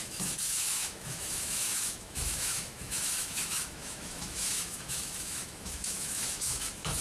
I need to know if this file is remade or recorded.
remade